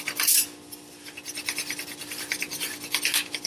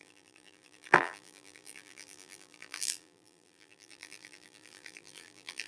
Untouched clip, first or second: first